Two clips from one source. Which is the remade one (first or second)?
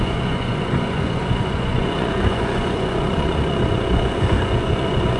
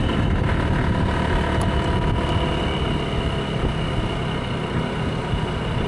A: first